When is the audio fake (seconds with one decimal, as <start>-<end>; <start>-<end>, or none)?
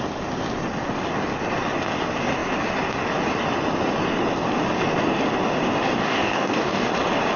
6.0-6.9